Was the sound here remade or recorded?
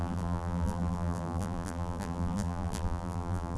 remade